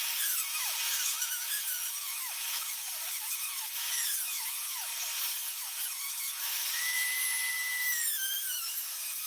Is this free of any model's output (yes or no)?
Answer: no